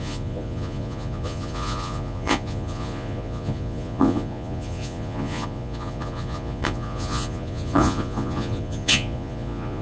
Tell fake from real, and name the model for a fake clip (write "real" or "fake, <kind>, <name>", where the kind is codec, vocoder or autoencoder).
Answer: fake, vocoder, Vocos